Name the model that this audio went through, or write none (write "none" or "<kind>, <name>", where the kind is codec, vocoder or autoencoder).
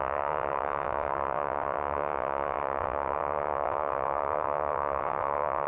vocoder, WaveNeXt